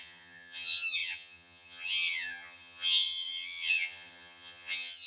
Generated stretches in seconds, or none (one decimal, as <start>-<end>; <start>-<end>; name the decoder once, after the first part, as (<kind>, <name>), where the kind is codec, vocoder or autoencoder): 0.0-5.1 (vocoder, HiFi-GAN)